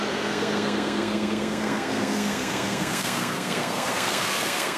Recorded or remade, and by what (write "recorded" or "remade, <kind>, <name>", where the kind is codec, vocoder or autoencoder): remade, codec, SNAC